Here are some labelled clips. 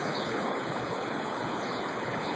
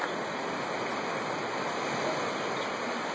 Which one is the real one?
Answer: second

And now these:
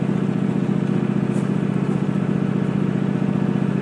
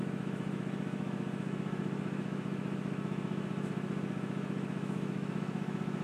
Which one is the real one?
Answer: first